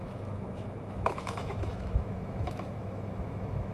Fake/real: fake